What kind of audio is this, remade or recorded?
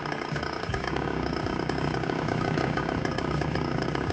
remade